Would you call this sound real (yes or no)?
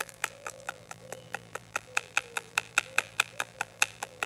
no